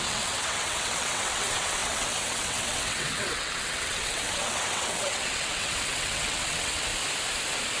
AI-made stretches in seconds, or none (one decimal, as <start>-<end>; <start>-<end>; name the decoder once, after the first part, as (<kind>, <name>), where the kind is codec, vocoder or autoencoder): 0.0-6.9 (vocoder, WaveNeXt)